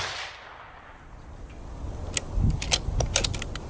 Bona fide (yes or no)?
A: yes